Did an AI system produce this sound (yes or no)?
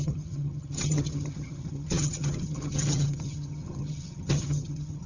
yes